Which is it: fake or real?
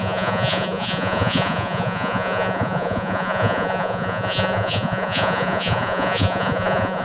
fake